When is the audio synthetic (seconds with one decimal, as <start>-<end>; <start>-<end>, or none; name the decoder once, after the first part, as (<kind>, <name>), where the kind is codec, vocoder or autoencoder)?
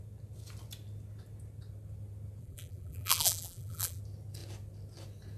2.4-4.0 (vocoder, BigVGAN v2)